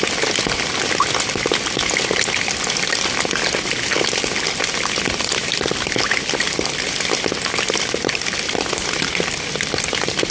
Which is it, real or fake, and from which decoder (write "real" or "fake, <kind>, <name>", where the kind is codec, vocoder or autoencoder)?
real